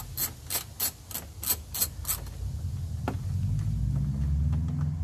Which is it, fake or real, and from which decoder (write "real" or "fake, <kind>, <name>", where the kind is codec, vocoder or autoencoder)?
real